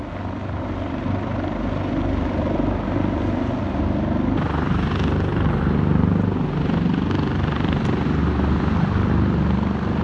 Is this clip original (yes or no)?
yes